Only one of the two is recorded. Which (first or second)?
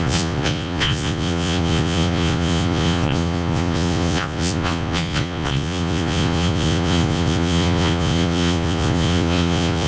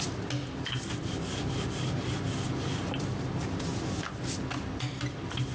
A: second